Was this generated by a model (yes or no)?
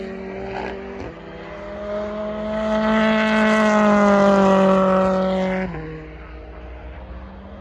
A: no